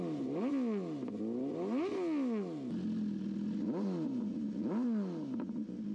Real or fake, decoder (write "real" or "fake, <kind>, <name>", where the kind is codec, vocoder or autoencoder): real